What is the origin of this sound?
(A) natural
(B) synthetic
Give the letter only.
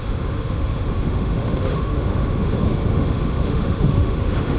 B